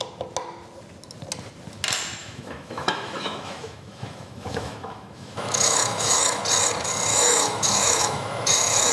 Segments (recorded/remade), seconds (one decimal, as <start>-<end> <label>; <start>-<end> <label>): 0.0-2.2 recorded; 2.2-6.4 remade; 6.4-7.1 recorded; 7.1-8.9 remade